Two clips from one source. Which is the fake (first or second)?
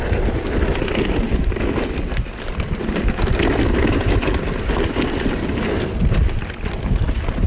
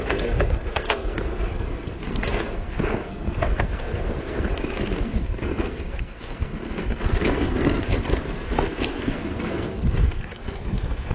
second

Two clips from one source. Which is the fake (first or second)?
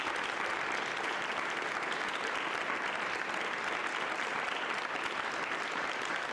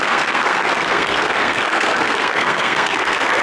second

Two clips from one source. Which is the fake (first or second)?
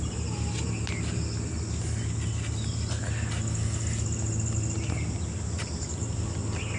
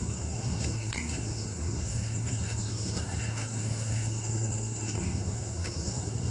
second